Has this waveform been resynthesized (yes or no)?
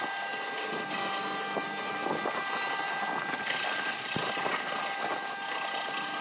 no